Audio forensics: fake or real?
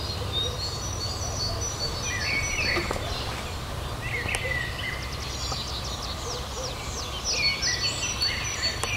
real